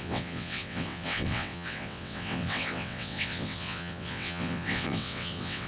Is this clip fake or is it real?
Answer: fake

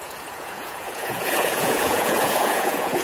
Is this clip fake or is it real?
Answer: fake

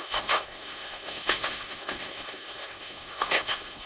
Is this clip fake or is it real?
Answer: fake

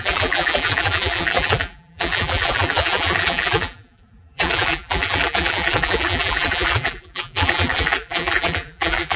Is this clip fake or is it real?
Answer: fake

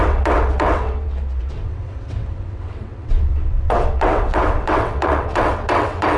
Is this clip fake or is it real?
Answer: fake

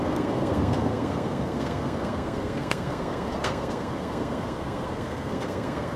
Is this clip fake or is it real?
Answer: fake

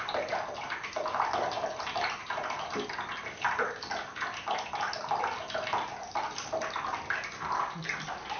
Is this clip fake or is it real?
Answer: real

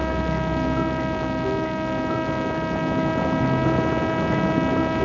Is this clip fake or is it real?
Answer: real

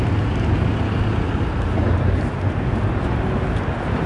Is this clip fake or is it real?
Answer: real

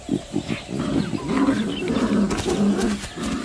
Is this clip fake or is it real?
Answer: real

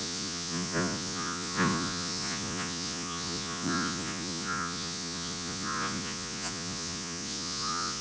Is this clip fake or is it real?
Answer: fake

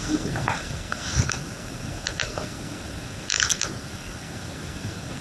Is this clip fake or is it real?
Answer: fake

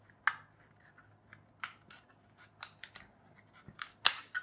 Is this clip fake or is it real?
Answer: real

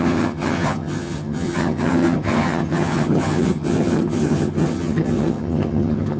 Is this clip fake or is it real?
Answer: fake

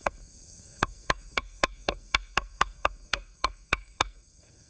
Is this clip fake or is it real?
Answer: fake